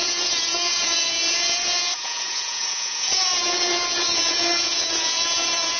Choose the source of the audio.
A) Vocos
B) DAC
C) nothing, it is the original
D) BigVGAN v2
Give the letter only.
A